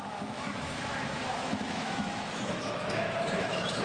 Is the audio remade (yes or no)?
yes